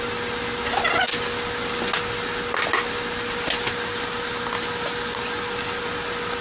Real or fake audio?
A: real